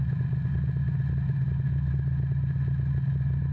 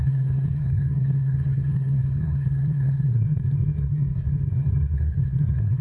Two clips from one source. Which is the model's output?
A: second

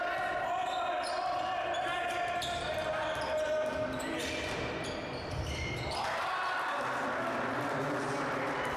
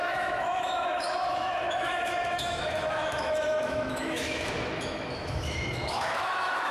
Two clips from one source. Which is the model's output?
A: second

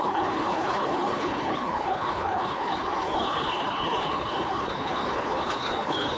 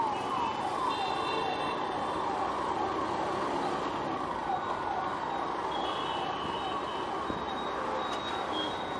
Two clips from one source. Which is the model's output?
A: first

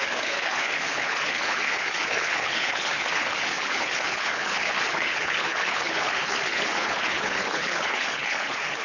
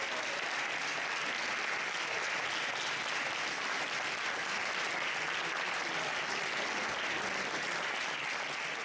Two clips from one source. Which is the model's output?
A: first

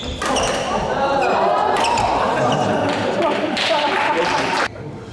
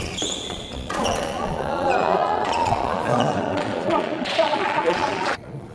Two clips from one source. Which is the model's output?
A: second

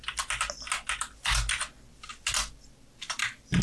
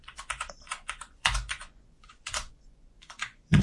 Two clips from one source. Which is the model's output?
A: second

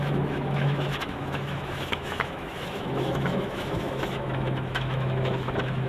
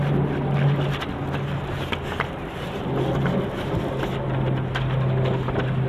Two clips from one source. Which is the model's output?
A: first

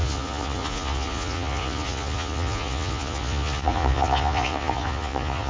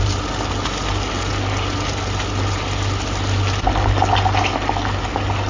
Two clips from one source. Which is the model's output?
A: first